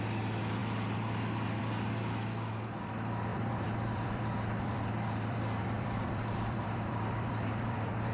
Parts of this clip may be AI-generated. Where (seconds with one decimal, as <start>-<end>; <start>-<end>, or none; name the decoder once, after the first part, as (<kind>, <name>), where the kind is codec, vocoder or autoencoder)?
3.3-8.1 (vocoder, BigVGAN v2)